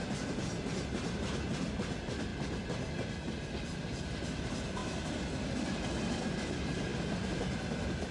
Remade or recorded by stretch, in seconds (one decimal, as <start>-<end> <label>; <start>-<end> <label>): 0.0-8.1 recorded